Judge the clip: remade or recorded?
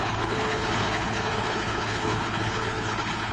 remade